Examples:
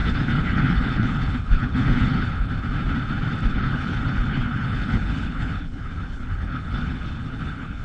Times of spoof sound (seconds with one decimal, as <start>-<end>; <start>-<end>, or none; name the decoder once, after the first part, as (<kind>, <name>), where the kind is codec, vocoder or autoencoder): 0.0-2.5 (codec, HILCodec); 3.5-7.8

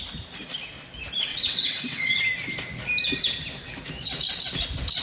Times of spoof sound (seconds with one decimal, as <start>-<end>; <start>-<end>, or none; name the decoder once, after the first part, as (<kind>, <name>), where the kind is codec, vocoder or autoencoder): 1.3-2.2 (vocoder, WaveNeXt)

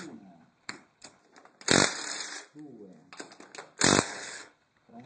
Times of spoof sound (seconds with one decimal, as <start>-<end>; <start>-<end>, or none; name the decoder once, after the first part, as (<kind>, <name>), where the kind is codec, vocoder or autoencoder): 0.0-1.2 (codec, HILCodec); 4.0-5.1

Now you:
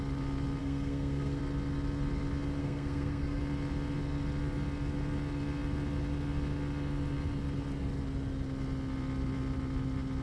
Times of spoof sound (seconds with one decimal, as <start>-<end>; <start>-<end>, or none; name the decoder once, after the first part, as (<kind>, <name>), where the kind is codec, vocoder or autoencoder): 0.6-1.4 (codec, SNAC); 2.6-3.4

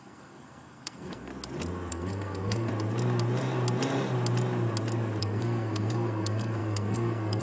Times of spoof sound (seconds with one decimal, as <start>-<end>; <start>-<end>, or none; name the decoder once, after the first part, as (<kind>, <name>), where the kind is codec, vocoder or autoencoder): 0.0-1.3 (codec, SNAC); 1.9-2.7; 5.2-7.4